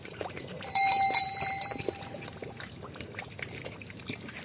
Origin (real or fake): fake